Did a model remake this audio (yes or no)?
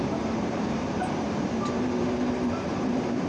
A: yes